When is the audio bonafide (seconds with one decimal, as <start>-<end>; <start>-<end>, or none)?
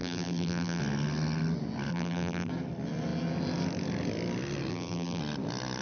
0.8-1.9; 2.5-4.7; 5.2-5.8